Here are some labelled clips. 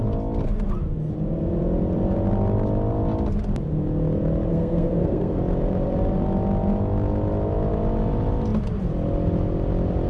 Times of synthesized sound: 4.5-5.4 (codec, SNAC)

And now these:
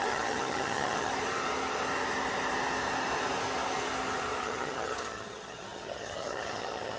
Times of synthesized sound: 0.0-1.1 (vocoder, HiFi-GAN); 4.4-7.0